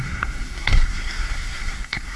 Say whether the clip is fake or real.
fake